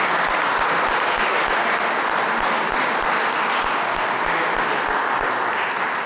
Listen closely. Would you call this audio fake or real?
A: real